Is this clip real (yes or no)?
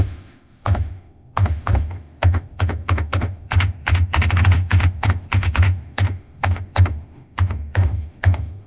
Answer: no